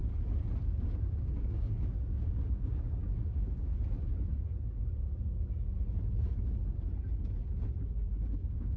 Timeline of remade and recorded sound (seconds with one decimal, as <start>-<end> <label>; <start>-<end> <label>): 0.0-0.6 recorded; 0.6-3.7 remade; 3.7-8.2 recorded; 8.2-8.8 remade